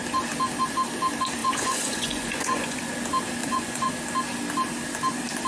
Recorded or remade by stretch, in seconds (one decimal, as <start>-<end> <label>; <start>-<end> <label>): 0.0-1.4 recorded; 1.4-2.9 remade; 2.9-3.4 recorded; 3.4-3.9 remade; 3.9-5.5 recorded